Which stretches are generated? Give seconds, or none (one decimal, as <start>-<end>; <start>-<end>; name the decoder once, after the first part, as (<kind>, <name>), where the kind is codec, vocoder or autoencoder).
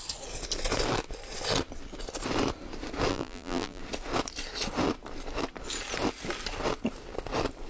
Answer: 3.1-3.8 (vocoder, BigVGAN v2)